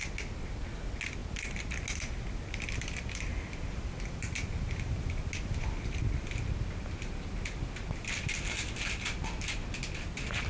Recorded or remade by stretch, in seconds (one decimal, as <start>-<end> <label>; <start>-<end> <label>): 0.0-10.5 recorded